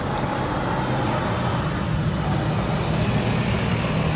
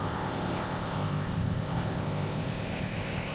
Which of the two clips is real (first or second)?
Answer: first